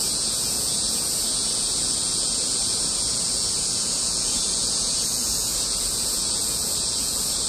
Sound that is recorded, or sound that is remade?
remade